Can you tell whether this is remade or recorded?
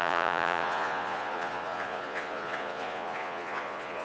remade